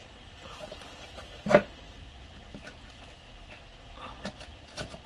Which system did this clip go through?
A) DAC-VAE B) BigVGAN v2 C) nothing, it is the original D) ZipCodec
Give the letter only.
C